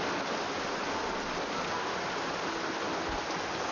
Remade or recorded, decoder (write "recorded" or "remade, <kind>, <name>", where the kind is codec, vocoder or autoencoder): recorded